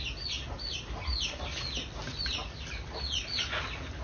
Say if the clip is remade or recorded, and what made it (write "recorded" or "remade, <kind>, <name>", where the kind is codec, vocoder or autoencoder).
recorded